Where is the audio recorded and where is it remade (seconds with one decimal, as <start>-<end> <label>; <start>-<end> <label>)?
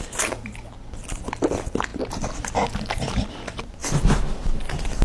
0.0-5.0 recorded